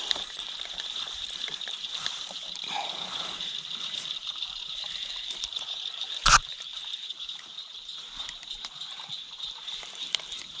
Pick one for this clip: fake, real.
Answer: fake